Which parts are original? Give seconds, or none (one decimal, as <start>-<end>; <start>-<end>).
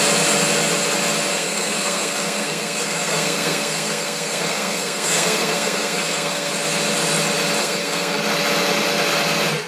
0.0-1.3; 6.5-7.6; 8.2-9.7